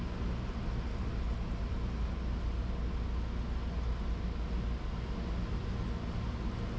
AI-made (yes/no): no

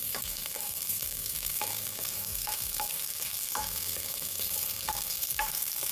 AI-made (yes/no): yes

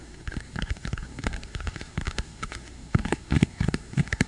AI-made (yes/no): yes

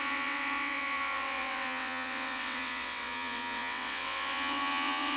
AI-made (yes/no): yes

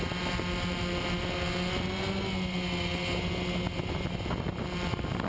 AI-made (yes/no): no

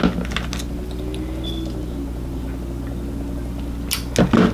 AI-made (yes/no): no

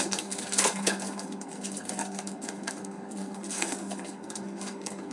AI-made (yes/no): yes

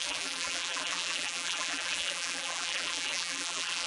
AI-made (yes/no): yes